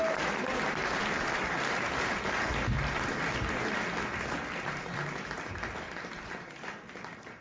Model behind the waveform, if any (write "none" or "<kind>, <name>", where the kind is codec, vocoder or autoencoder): none